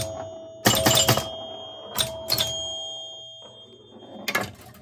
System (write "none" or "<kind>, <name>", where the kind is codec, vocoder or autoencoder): none